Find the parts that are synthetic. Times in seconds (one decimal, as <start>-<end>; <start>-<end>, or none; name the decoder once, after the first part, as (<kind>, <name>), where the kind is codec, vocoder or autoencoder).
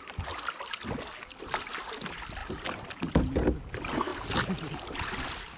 none